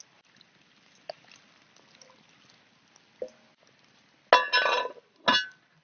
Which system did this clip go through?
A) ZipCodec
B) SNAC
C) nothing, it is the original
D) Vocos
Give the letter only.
C